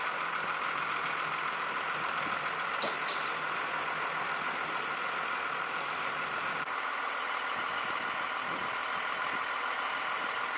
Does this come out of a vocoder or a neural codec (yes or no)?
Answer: yes